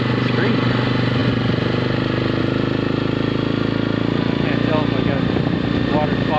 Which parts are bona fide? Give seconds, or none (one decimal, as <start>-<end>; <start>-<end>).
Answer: 0.0-6.4